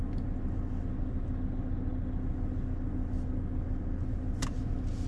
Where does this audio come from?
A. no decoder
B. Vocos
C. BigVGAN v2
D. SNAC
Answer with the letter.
A